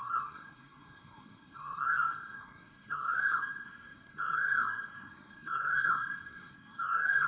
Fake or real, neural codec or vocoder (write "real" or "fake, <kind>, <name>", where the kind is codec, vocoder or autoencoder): fake, codec, SNAC